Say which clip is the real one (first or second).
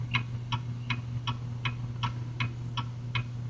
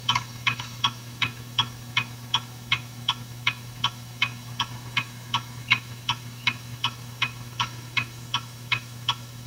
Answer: first